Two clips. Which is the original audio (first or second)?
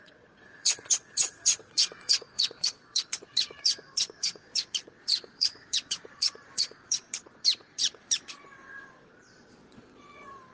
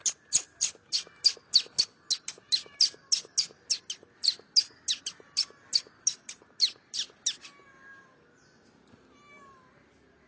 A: second